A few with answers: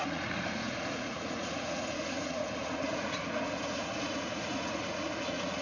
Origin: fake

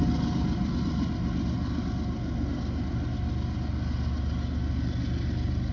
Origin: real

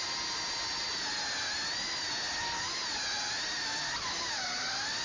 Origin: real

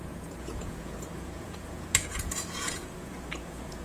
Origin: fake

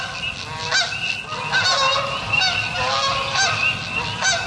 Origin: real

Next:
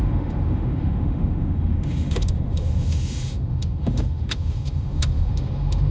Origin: fake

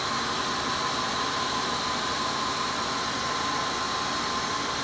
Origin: real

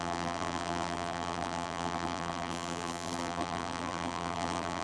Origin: fake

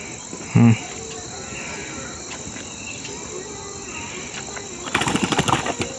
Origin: real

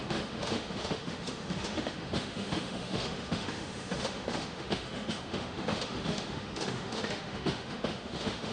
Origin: fake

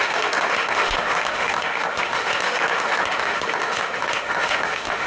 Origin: fake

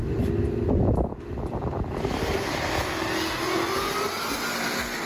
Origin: real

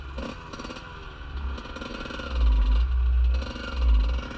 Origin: real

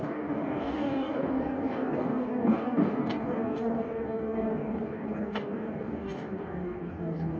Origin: fake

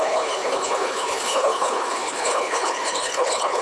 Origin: fake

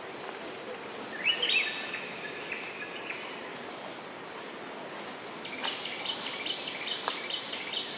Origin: real